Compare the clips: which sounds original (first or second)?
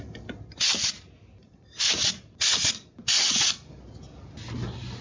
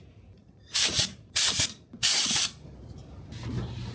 first